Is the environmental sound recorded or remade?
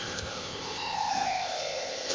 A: remade